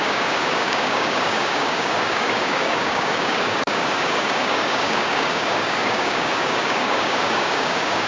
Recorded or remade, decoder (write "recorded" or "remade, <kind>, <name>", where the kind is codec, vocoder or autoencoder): remade, codec, DAC